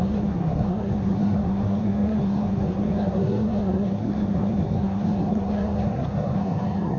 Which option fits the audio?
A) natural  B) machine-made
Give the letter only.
B